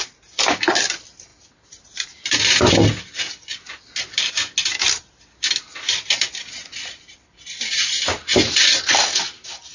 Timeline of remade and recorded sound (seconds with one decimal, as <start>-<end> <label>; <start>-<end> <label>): 0.0-9.7 recorded